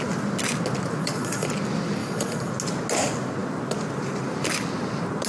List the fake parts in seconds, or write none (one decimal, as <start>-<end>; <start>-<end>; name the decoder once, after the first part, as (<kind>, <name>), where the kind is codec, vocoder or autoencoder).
1.0-1.5 (vocoder, Vocos); 2.0-2.5